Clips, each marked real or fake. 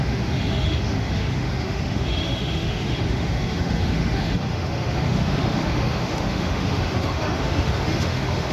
fake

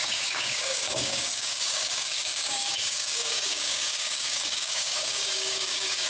fake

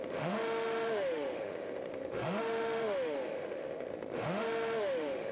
fake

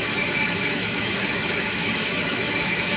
fake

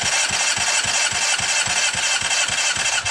real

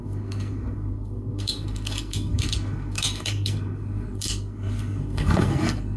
fake